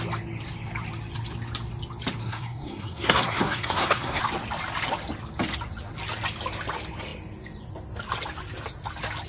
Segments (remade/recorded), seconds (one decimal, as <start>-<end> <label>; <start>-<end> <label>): 0.0-2.2 recorded; 2.2-4.2 remade; 4.2-9.3 recorded